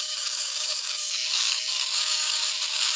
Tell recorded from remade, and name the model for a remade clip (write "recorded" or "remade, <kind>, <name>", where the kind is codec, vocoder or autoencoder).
remade, codec, DAC